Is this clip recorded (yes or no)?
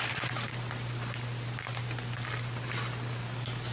yes